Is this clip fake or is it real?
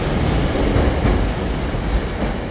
fake